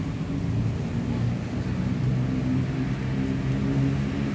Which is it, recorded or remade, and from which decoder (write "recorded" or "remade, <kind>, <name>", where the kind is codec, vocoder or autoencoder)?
recorded